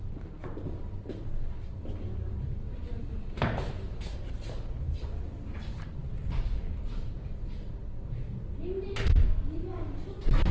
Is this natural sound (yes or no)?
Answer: yes